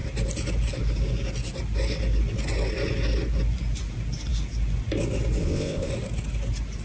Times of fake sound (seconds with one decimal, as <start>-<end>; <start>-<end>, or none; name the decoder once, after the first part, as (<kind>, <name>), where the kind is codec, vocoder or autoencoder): 5.4-5.9 (codec, ZipCodec)

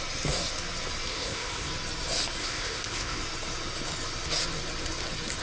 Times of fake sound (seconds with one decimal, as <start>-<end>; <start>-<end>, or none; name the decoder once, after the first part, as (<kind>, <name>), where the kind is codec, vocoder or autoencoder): 1.1-1.7 (codec, ZipCodec); 2.4-3.2